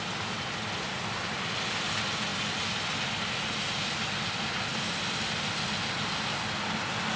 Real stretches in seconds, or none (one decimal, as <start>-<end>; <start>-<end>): 0.0-7.2